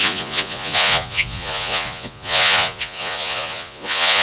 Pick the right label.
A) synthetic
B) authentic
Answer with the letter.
A